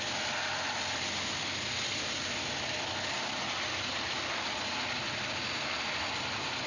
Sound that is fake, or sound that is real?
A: fake